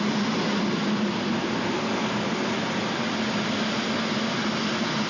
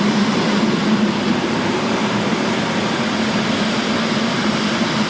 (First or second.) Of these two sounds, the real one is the first